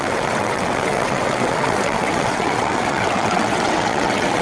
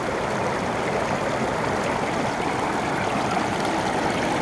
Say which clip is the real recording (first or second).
second